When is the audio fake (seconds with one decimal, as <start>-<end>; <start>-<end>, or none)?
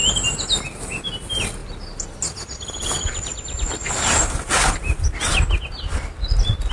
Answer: none